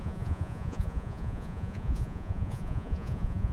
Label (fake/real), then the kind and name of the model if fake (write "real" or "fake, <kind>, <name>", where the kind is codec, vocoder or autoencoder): fake, vocoder, Vocos